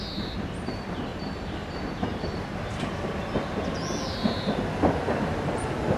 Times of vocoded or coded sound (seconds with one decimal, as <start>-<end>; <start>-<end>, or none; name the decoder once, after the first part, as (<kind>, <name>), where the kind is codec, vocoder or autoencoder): 1.1-2.8 (vocoder, BigVGAN v2)